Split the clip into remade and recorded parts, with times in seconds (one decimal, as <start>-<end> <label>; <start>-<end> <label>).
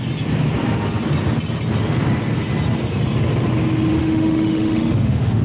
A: 0.0-4.0 recorded; 4.0-5.4 remade